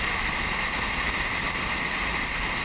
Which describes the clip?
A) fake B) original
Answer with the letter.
B